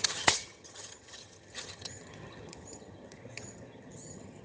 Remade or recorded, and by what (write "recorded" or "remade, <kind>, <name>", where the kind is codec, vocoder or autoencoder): remade, vocoder, HiFi-GAN